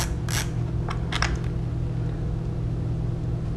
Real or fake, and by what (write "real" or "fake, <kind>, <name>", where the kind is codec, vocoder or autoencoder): real